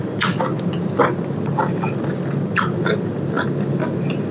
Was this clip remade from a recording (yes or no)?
no